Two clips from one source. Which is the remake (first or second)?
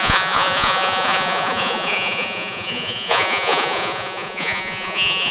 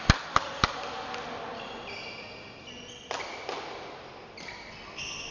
first